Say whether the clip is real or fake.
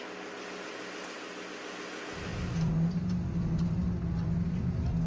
real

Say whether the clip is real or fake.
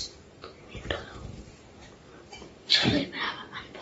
fake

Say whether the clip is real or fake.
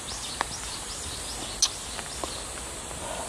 real